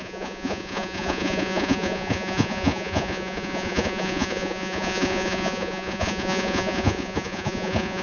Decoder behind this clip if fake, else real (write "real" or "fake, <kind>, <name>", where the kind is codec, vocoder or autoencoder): fake, vocoder, Vocos